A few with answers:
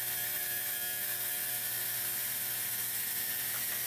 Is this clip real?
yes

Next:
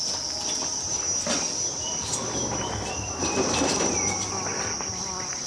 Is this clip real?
yes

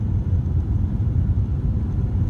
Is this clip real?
no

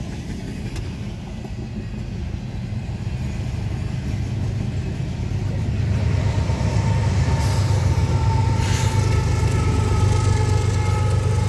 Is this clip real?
yes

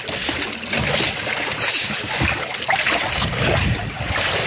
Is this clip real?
no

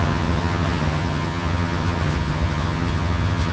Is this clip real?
no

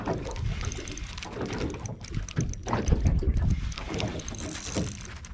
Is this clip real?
yes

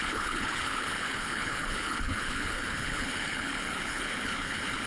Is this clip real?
no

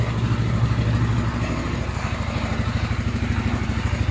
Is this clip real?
yes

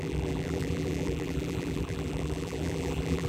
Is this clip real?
no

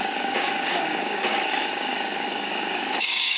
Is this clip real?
no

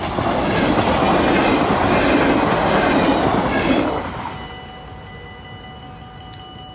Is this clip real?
yes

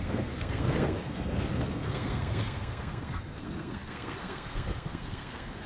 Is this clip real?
no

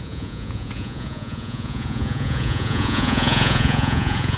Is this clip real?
no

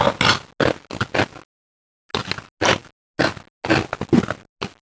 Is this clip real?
yes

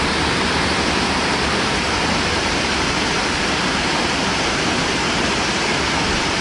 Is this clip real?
no